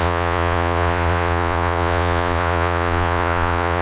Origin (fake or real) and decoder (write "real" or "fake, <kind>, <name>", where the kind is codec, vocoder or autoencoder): fake, vocoder, Vocos